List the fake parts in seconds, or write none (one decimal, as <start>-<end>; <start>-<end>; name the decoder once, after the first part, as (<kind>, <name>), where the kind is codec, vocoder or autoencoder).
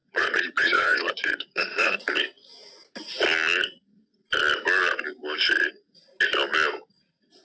0.0-2.1 (vocoder, Vocos)